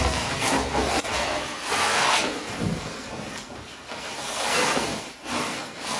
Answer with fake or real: fake